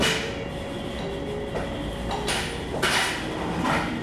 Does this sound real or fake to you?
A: real